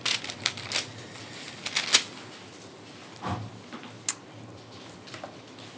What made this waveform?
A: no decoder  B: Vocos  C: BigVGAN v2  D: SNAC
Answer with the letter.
A